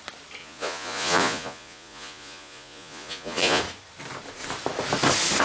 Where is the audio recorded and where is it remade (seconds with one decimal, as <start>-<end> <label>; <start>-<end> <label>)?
0.0-0.4 recorded; 0.4-3.6 remade; 3.6-5.4 recorded